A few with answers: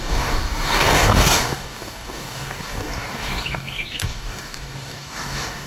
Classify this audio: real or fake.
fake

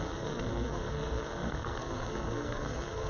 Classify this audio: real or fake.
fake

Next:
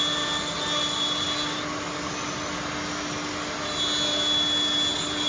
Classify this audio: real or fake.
real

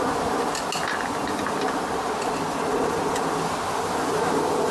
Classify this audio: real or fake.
real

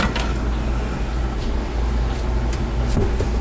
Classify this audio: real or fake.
real